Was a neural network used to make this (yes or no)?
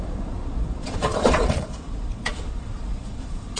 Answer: yes